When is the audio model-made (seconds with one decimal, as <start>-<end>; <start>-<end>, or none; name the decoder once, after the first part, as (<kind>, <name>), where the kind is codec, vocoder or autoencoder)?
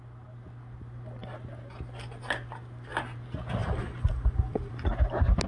3.6-4.7 (vocoder, BigVGAN v2)